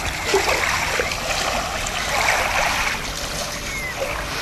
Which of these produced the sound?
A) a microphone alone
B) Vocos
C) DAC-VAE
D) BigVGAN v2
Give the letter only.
A